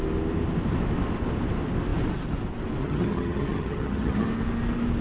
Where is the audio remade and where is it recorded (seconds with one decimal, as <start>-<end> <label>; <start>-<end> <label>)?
0.0-2.8 recorded; 2.8-4.3 remade; 4.3-5.0 recorded